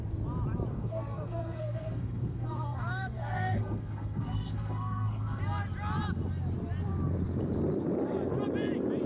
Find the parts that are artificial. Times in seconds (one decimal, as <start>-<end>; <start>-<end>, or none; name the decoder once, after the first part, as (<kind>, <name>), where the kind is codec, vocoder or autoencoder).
0.7-5.4 (codec, SNAC)